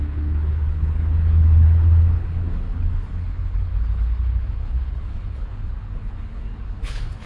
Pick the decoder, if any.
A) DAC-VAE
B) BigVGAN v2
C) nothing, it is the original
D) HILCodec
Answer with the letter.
D